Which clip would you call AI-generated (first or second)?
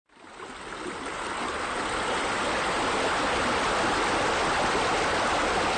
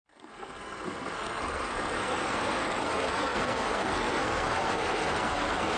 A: second